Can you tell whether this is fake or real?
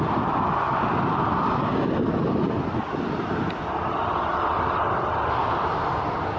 real